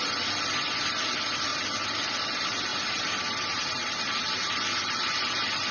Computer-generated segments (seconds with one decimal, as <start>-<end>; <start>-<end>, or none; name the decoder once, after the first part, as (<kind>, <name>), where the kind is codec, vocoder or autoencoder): 0.0-1.5 (vocoder, BigVGAN v2); 2.1-5.7